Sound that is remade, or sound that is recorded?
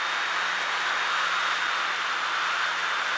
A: recorded